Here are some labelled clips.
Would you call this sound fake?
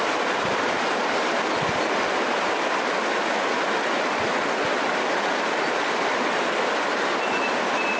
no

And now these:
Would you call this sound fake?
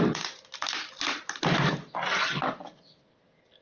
no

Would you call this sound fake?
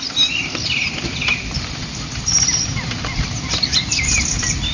no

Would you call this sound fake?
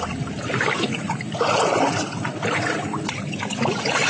no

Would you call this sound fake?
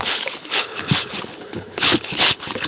yes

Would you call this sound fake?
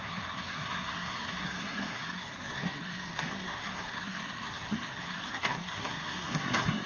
yes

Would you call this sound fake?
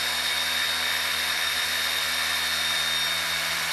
no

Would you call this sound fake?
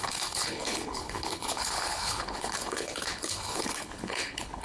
yes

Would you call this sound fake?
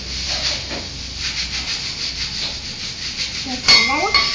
no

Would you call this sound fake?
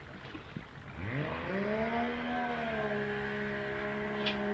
no